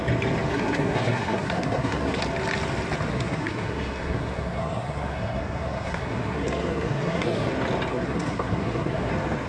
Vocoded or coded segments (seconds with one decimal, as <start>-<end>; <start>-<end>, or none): 0.5-2.2; 3.1-7.5; 7.9-9.1